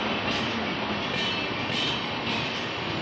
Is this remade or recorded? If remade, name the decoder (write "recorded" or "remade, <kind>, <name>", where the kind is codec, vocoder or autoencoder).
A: recorded